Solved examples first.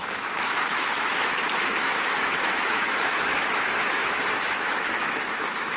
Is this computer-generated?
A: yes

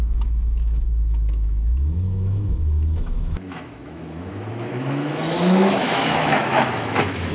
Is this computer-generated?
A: yes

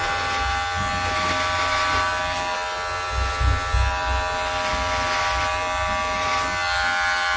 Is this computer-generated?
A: no